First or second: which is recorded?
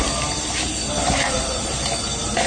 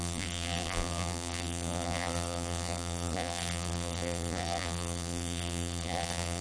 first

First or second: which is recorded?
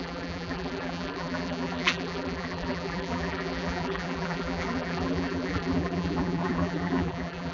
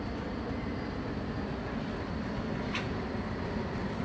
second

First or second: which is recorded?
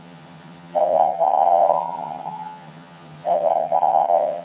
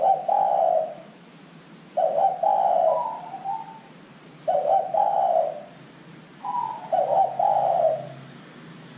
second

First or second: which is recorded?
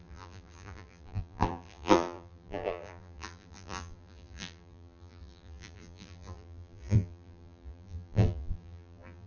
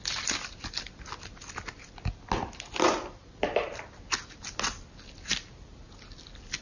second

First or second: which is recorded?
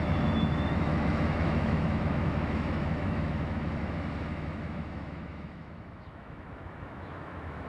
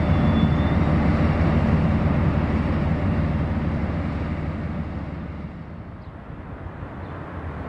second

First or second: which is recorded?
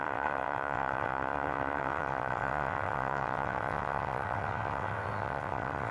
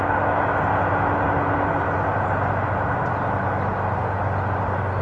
second